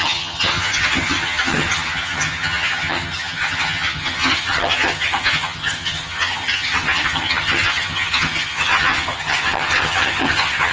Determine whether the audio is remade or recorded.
remade